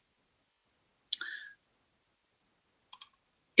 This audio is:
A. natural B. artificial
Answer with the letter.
A